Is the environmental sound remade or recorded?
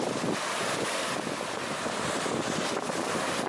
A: recorded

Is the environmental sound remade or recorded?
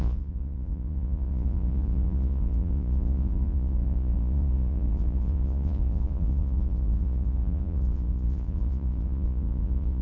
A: remade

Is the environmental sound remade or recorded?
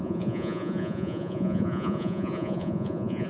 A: remade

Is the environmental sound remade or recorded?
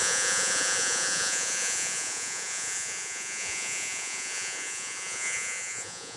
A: remade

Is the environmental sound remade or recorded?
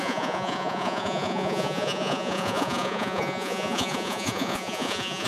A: remade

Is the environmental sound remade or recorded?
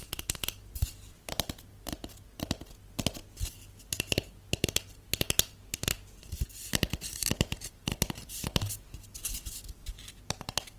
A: recorded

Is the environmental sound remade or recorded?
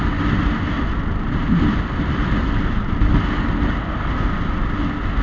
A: recorded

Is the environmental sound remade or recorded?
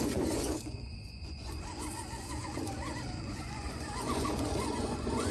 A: remade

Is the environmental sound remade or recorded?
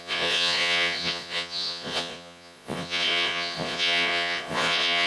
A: remade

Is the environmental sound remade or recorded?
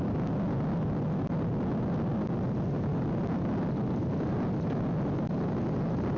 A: recorded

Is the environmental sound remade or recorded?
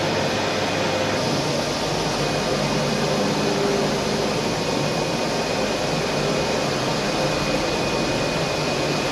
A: recorded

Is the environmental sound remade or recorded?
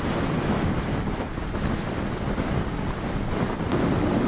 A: recorded